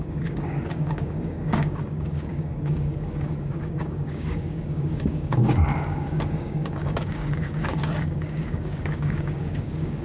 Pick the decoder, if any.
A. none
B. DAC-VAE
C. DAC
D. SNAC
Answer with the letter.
C